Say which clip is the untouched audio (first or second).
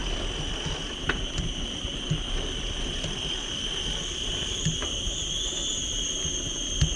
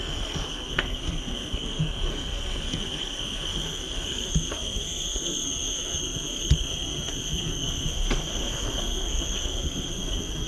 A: first